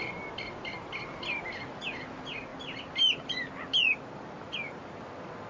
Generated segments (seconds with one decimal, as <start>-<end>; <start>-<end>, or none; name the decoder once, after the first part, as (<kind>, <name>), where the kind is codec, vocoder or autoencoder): none